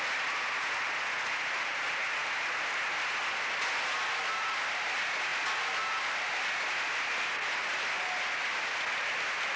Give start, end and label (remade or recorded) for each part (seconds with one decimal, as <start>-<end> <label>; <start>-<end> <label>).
0.0-9.6 recorded